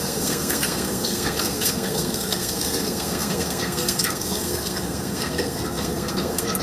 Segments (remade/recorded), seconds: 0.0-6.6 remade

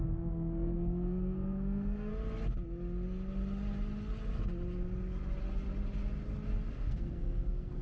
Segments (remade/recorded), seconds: 0.0-2.1 remade; 2.1-6.7 recorded; 6.7-7.8 remade

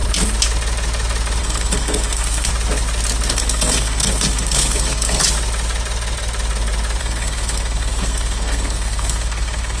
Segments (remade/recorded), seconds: 0.0-1.4 recorded; 1.4-2.5 remade; 2.5-3.3 recorded; 3.3-5.2 remade; 5.2-7.0 recorded; 7.0-9.8 remade

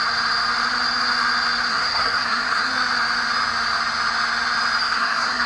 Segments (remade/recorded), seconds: 0.0-1.7 recorded; 1.7-2.7 remade; 2.7-4.8 recorded; 4.8-5.5 remade